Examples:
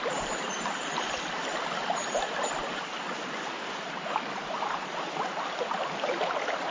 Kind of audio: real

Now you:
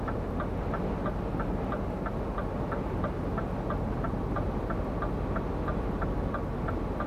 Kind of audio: real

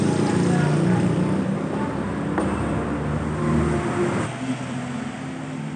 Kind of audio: real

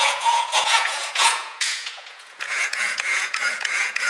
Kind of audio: fake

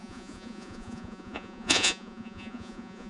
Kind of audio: fake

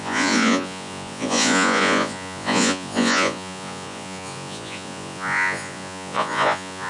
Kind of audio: fake